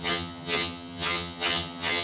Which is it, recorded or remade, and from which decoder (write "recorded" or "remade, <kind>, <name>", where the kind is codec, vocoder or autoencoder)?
remade, vocoder, HiFi-GAN